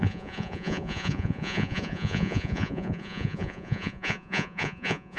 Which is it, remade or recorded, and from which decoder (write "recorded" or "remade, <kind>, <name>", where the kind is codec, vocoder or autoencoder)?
remade, vocoder, Vocos